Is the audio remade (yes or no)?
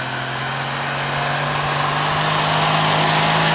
no